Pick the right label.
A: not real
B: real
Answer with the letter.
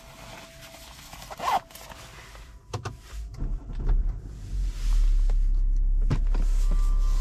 B